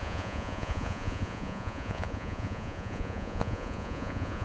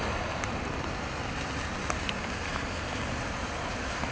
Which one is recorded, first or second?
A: second